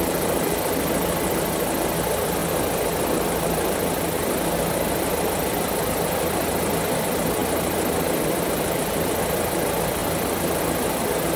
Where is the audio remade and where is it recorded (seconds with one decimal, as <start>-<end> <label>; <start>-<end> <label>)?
0.0-2.4 remade; 2.4-7.0 recorded; 7.0-7.4 remade; 7.4-8.1 recorded; 8.1-11.4 remade